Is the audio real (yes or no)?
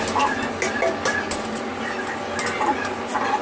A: yes